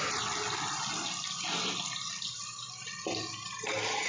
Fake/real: real